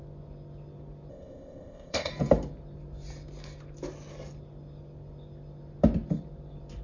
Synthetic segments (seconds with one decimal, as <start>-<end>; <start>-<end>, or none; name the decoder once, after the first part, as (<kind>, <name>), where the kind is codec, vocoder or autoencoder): 1.1-2.1 (codec, ZipCodec)